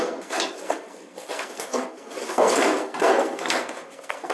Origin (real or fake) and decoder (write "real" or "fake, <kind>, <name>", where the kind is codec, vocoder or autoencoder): fake, codec, SNAC